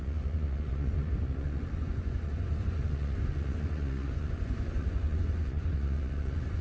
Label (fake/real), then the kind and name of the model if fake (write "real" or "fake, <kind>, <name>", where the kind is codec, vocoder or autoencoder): fake, vocoder, Vocos